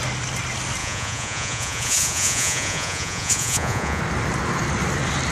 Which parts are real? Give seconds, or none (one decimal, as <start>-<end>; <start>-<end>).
0.0-0.8; 4.0-5.3